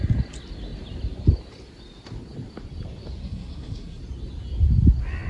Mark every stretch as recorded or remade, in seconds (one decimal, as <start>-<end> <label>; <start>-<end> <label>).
0.0-3.2 recorded; 3.2-4.0 remade; 4.0-5.3 recorded